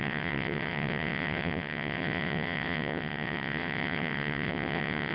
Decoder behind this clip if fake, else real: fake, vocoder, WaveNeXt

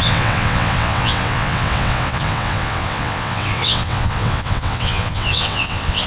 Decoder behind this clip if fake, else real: fake, vocoder, WaveNeXt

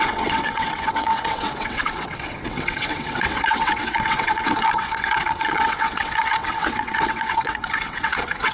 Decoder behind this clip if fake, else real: fake, vocoder, WaveNeXt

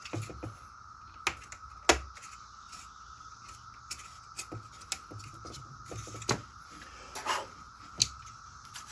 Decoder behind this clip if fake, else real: real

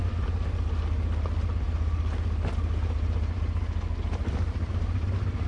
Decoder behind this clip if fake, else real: real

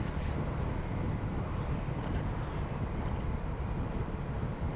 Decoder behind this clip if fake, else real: real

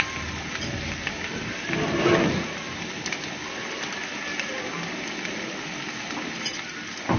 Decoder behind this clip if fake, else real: real